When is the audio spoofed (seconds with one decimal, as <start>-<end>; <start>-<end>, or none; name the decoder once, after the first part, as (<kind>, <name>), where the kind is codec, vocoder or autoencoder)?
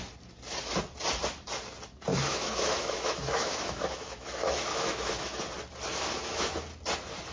2.1-5.4 (autoencoder, DAC-VAE); 5.9-6.5